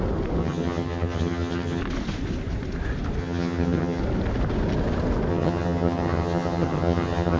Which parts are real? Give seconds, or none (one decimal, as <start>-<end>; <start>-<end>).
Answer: 0.0-0.4; 1.8-3.2; 4.0-5.3